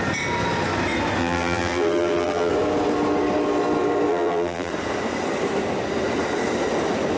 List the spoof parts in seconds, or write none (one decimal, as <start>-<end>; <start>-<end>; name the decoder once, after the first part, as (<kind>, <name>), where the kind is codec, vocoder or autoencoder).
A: 1.2-2.5 (vocoder, BigVGAN v2); 4.1-4.7